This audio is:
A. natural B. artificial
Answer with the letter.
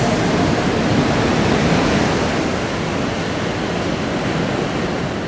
A